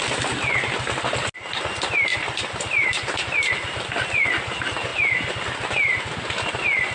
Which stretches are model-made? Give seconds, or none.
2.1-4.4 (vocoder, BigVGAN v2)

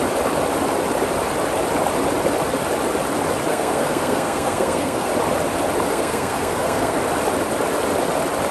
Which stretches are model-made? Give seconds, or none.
3.5-5.1 (codec, SNAC); 5.9-7.0

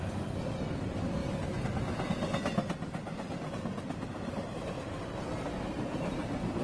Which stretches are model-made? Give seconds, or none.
none